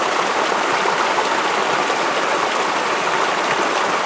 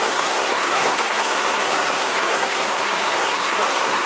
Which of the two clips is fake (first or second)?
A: second